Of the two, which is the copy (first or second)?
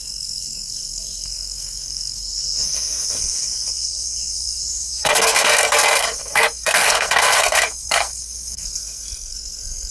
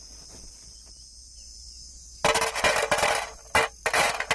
first